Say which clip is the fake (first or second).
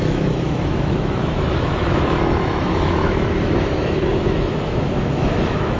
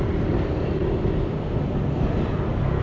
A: first